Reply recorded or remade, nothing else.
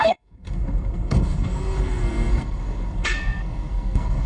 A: remade